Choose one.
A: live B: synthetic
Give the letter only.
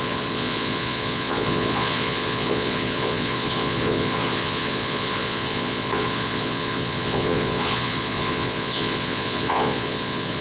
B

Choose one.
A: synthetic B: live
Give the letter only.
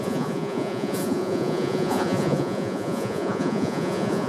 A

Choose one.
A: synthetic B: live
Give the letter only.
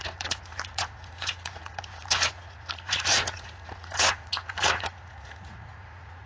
A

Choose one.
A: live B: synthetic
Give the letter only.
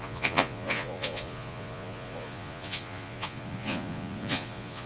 B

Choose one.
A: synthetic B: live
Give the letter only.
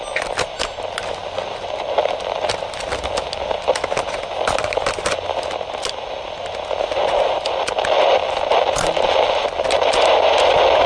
B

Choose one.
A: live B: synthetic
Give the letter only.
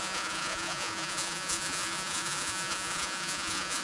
B